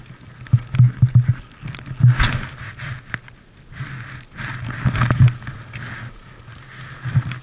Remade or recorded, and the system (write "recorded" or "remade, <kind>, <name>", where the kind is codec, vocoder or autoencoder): recorded